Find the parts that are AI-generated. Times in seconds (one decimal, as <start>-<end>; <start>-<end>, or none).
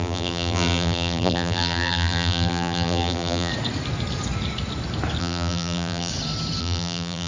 0.0-3.5; 5.2-6.1; 6.6-7.3